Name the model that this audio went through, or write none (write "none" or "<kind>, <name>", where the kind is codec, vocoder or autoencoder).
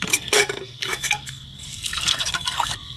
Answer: codec, SNAC